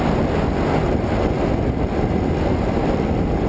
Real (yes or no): yes